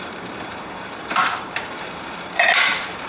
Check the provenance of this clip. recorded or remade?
remade